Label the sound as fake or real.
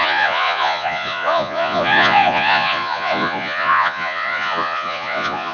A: fake